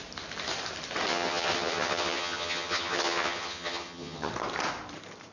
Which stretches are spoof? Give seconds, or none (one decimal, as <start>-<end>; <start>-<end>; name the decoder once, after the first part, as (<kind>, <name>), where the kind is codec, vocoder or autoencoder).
1.1-4.3 (vocoder, HiFi-GAN)